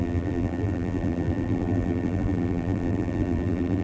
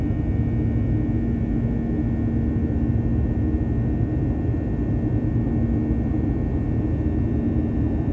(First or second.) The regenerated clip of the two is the first